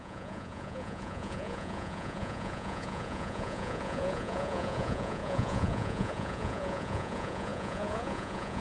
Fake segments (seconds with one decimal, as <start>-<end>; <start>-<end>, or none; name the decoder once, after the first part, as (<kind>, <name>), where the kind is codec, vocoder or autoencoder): 0.0-8.6 (vocoder, Vocos)